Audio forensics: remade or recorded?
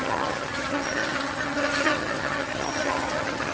remade